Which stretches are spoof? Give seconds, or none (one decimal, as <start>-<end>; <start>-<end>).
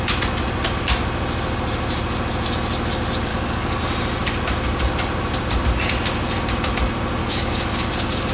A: 3.3-3.8; 7.2-8.3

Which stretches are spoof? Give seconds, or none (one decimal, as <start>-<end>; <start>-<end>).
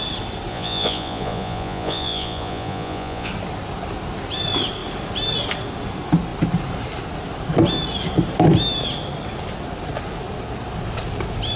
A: 0.5-3.3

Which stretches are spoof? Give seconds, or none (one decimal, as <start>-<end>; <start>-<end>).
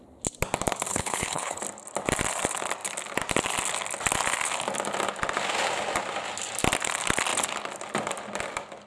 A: 0.9-1.6